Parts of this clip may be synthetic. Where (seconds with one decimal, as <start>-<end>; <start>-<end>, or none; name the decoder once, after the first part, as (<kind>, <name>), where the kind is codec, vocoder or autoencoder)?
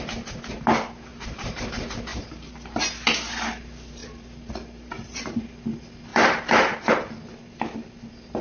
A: 1.1-1.6 (vocoder, BigVGAN v2); 2.1-2.8; 4.0-5.4; 6.1-7.1